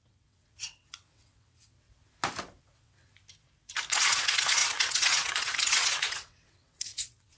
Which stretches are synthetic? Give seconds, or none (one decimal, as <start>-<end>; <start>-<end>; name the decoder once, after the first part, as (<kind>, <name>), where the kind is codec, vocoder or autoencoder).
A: 0.0-2.0 (vocoder, WaveNeXt); 2.6-3.1; 3.9-7.4